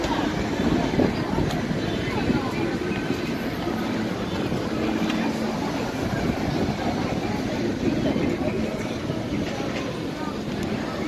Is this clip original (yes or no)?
yes